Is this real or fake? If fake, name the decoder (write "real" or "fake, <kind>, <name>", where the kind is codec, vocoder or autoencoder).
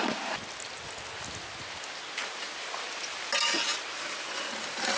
real